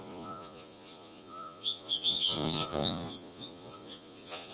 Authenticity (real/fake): fake